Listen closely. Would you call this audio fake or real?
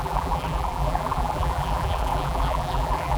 fake